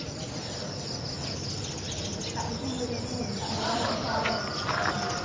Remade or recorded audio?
recorded